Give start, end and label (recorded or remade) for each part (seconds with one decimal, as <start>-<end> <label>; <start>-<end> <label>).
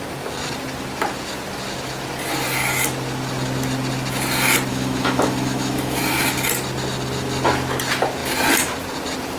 0.0-4.7 recorded; 4.7-6.0 remade; 6.0-9.4 recorded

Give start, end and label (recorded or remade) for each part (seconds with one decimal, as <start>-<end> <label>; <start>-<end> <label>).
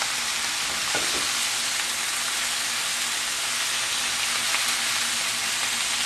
0.0-6.1 recorded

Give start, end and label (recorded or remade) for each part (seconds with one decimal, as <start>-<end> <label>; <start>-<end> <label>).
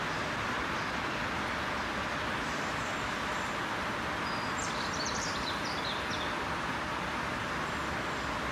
0.0-4.6 recorded; 4.6-7.9 remade; 7.9-8.5 recorded